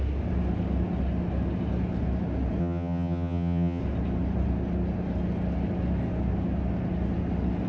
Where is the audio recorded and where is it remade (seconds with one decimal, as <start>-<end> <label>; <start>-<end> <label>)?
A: 0.0-2.6 recorded; 2.6-3.8 remade; 3.8-7.7 recorded

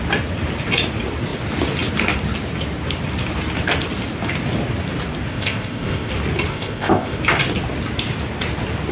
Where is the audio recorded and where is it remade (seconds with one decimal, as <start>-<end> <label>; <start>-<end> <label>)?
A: 0.0-5.3 recorded; 5.3-6.1 remade; 6.1-6.5 recorded; 6.5-7.2 remade; 7.2-8.9 recorded

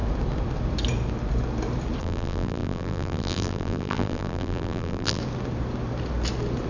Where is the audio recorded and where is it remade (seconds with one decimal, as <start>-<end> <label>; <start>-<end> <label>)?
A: 0.0-2.0 recorded; 2.0-5.2 remade; 5.2-6.7 recorded

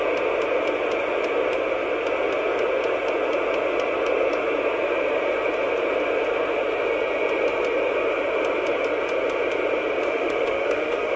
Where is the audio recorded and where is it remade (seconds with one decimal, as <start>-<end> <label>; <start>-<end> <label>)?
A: 0.0-10.0 recorded; 10.0-11.2 remade

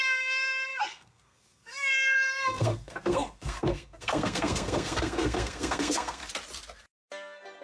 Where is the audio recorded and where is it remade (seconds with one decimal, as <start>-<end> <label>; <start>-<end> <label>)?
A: 0.0-6.2 remade; 6.2-7.0 recorded; 7.0-7.6 remade

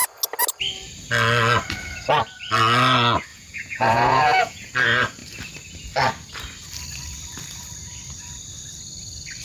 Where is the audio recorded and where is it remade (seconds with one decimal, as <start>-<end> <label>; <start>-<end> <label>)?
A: 0.0-3.3 recorded; 3.3-4.7 remade; 4.7-9.4 recorded